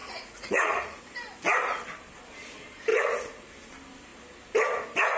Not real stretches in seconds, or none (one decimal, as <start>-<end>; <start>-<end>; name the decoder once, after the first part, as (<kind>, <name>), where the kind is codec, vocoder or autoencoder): 0.0-1.0 (vocoder, Vocos); 2.9-3.5